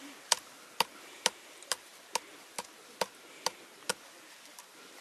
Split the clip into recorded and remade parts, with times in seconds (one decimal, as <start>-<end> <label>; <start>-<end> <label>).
0.0-5.0 recorded